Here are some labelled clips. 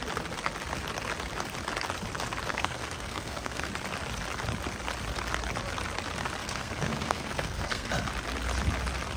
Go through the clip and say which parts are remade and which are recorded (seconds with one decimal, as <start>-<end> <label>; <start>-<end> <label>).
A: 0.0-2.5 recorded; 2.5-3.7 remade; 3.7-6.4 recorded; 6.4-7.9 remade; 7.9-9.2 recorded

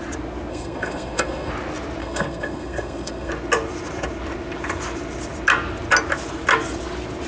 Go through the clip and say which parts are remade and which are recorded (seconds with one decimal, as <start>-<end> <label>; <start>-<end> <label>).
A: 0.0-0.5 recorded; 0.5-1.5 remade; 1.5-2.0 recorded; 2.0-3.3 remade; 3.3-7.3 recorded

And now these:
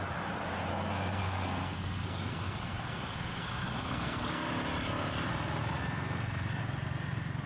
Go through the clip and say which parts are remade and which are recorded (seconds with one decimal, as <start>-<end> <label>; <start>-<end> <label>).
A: 0.0-0.7 recorded; 0.7-4.5 remade; 4.5-5.6 recorded; 5.6-6.6 remade; 6.6-7.5 recorded

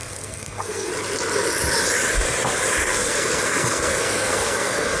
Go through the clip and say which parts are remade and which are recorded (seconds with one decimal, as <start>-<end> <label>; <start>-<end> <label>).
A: 0.0-0.9 remade; 0.9-2.8 recorded; 2.8-5.0 remade

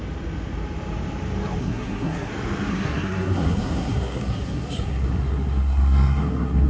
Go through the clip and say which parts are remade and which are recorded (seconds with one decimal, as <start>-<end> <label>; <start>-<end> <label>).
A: 0.0-1.6 recorded; 1.6-2.3 remade; 2.3-2.7 recorded; 2.7-6.7 remade

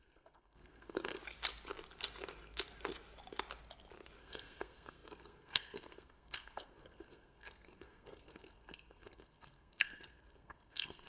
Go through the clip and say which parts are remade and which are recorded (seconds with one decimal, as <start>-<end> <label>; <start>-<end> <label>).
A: 0.0-1.2 remade; 1.2-4.2 recorded; 4.2-11.1 remade

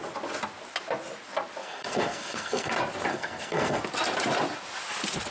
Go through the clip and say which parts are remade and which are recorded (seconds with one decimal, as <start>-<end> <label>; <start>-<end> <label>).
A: 0.0-1.6 recorded; 1.6-2.7 remade; 2.7-3.1 recorded; 3.1-3.8 remade; 3.8-5.3 recorded